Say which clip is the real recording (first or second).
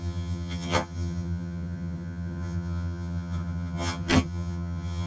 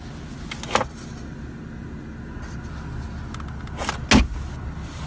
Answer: second